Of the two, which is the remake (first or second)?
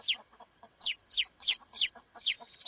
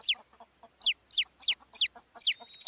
first